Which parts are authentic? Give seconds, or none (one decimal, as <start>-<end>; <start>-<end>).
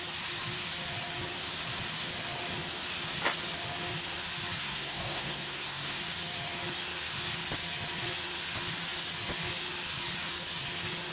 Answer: 0.0-4.6; 6.0-11.1